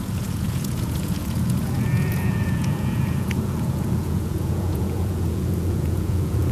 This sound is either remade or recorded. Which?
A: remade